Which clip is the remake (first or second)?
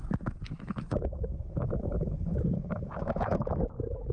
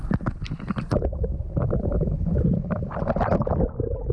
first